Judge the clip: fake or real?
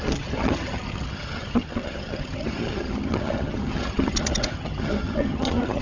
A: fake